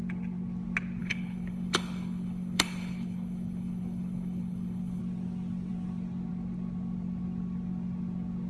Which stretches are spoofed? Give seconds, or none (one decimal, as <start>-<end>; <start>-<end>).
1.0-5.0